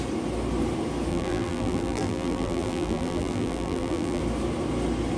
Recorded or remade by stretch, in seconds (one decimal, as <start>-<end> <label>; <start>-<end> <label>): 0.0-1.1 recorded; 1.1-4.2 remade; 4.2-5.2 recorded